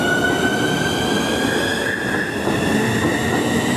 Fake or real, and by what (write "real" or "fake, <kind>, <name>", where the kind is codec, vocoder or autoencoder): real